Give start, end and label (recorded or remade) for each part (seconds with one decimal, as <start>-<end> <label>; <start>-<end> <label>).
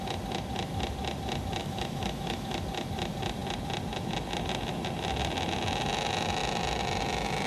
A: 0.0-1.6 recorded; 1.6-2.6 remade; 2.6-7.5 recorded